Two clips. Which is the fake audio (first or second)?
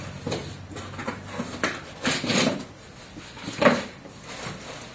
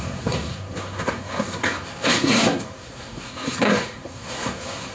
second